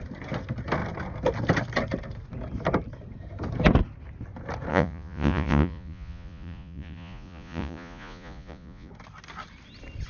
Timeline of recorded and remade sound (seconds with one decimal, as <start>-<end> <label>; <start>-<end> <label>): 0.0-4.7 recorded; 4.7-8.9 remade; 8.9-10.1 recorded